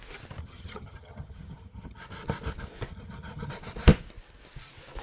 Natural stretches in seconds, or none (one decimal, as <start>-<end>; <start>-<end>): 0.0-0.4; 2.0-2.9; 3.5-5.0